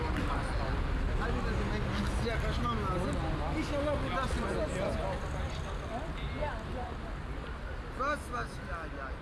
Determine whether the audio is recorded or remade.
recorded